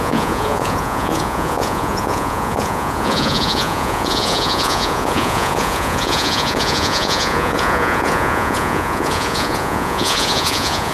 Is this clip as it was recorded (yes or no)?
no